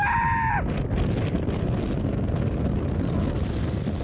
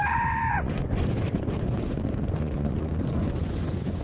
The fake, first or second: second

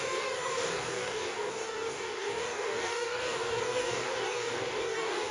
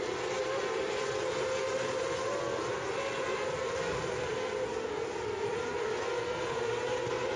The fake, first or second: first